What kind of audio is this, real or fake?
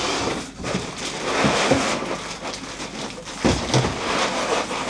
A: real